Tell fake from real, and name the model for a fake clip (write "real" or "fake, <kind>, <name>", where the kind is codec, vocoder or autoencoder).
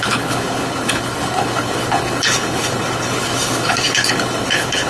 fake, codec, HILCodec